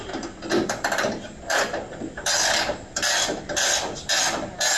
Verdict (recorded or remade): recorded